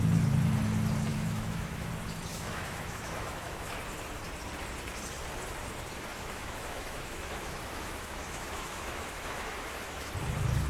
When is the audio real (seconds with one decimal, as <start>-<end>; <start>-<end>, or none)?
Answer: 0.0-1.1; 1.9-2.3; 3.8-6.1; 10.1-10.7